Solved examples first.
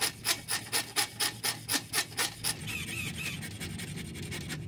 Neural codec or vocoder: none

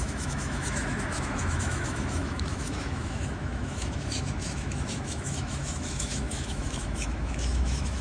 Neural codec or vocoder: autoencoder, DAC-VAE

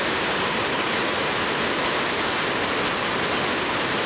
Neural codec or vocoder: none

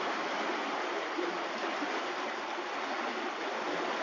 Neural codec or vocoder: none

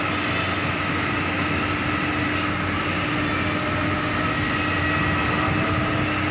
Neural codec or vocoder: none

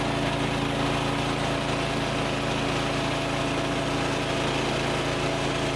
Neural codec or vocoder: none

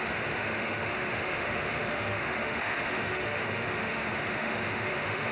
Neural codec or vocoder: autoencoder, DAC-VAE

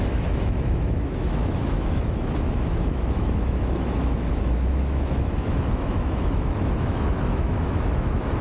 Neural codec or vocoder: autoencoder, DAC-VAE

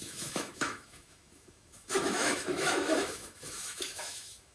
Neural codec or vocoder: autoencoder, DAC-VAE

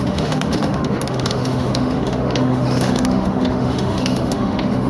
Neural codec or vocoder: autoencoder, DAC-VAE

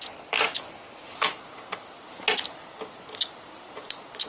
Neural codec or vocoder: none